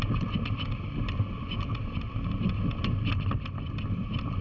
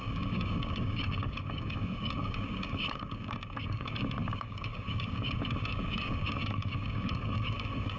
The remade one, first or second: second